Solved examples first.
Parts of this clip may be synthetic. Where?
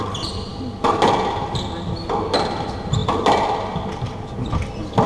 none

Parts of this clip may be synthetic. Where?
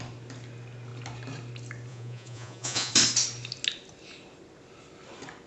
1.9-2.9 (vocoder, Vocos)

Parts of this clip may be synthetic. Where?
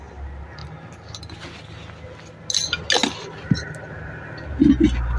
none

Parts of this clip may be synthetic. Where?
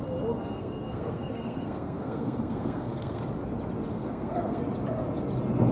0.4-3.2 (codec, SNAC); 3.9-4.6